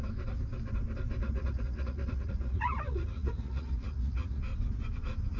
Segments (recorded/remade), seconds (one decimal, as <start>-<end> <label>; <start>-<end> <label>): 0.0-1.2 recorded; 1.2-4.4 remade; 4.4-5.4 recorded